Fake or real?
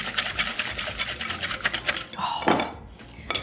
real